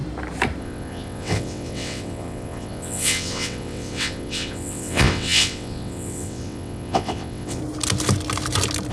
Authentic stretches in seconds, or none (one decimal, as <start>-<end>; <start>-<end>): 0.0-0.6; 7.6-8.9